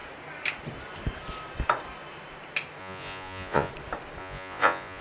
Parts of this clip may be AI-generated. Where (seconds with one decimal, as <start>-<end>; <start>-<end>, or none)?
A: 2.8-3.7; 4.2-5.0